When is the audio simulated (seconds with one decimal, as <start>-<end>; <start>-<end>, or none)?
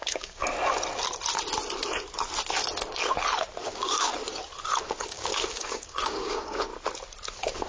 0.0-0.4; 3.6-4.1; 5.0-6.7; 7.3-7.7